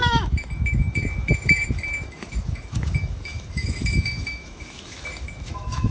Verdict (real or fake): fake